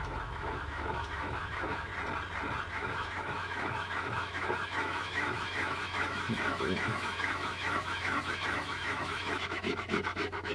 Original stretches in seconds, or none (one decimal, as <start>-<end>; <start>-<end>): 1.9-2.7